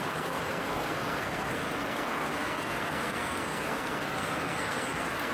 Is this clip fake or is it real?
fake